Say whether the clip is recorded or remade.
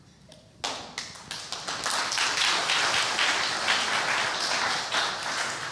recorded